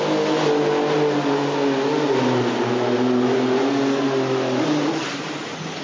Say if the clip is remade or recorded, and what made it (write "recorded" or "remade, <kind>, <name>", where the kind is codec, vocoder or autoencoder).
recorded